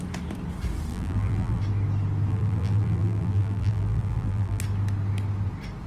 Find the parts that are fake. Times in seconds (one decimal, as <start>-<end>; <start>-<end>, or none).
0.9-1.6; 2.3-4.6